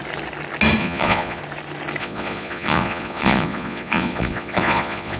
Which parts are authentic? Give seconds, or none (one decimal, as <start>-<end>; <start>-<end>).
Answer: 0.0-0.8; 1.4-2.0